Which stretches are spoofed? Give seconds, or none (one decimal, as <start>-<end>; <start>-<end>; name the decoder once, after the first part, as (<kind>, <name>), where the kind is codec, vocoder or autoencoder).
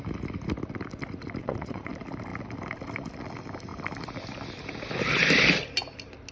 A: 1.4-1.9 (vocoder, Vocos)